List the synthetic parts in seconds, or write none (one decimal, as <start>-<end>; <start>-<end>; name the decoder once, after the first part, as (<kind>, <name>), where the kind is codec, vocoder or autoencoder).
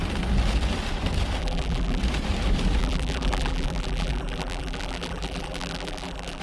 1.4-2.0 (vocoder, BigVGAN v2); 2.8-6.4